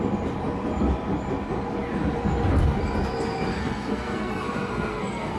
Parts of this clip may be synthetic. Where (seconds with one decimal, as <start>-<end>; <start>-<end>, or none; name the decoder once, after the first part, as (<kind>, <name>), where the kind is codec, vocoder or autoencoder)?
3.5-5.4 (codec, SNAC)